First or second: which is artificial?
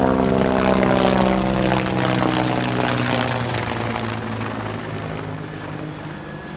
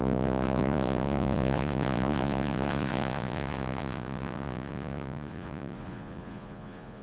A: second